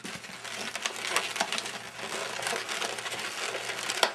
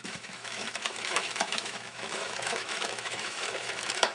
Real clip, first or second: first